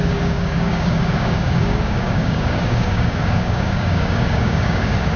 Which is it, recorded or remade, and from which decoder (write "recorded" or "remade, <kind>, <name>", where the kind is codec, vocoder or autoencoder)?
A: remade, codec, DAC